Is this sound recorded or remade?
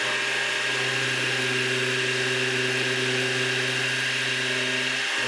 recorded